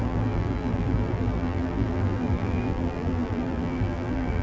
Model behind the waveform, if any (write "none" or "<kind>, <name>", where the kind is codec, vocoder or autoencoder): vocoder, BigVGAN v2